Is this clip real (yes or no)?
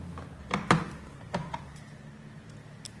yes